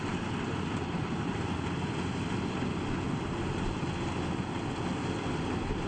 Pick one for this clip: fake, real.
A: real